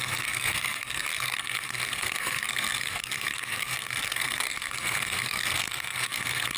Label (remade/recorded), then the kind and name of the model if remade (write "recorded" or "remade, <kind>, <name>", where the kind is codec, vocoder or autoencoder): remade, codec, SNAC